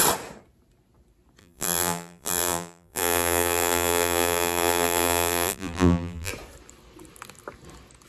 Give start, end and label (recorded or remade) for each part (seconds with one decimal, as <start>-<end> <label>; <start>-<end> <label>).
0.0-1.4 recorded; 1.4-6.3 remade; 6.3-8.1 recorded